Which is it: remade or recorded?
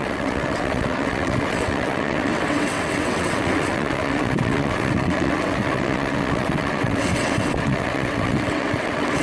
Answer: remade